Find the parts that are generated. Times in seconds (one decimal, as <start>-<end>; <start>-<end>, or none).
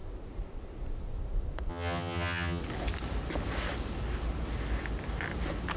1.7-2.6